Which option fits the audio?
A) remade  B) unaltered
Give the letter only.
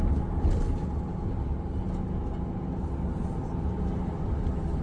B